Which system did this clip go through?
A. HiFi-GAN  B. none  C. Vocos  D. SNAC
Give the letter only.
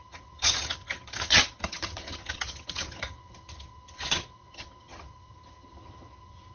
A